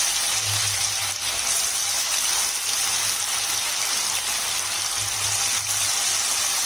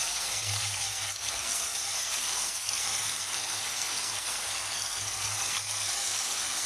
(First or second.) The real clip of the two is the first